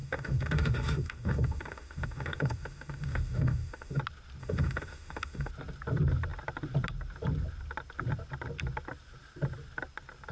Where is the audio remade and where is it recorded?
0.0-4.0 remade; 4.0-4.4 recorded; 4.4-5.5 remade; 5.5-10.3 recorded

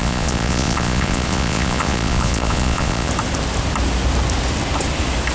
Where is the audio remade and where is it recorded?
0.0-3.1 remade; 3.1-5.3 recorded

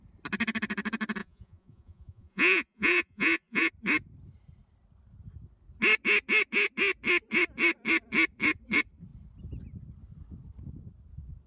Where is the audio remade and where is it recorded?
0.0-1.2 recorded; 1.2-3.7 remade; 3.7-11.5 recorded

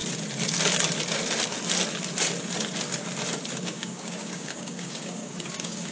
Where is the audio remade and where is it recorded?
0.0-3.5 recorded; 3.5-5.9 remade

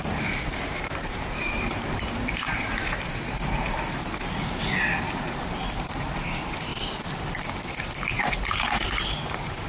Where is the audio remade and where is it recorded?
0.0-6.7 remade; 6.7-7.8 recorded; 7.8-9.7 remade

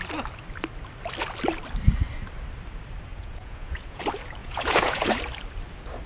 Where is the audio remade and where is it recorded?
0.0-3.1 recorded; 3.1-4.0 remade; 4.0-4.4 recorded; 4.4-5.1 remade; 5.1-6.1 recorded

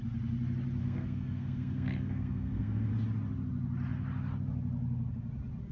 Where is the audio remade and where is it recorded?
0.0-0.8 recorded; 0.8-2.9 remade; 2.9-5.7 recorded

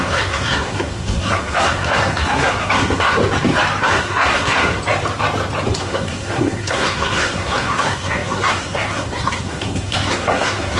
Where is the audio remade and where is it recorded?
0.0-3.2 remade; 3.2-3.8 recorded; 3.8-4.8 remade; 4.8-5.8 recorded; 5.8-10.8 remade